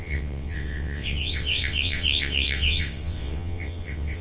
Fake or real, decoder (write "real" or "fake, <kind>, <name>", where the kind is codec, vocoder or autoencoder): fake, vocoder, WaveNeXt